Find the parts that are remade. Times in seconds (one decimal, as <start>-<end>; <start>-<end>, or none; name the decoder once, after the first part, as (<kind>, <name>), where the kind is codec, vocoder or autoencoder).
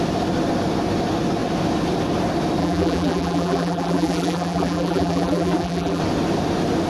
2.6-6.0 (vocoder, BigVGAN v2)